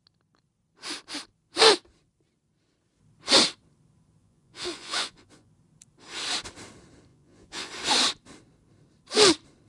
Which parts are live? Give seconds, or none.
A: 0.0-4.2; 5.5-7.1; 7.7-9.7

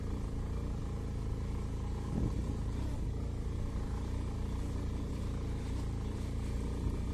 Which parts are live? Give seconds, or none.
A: 0.0-7.1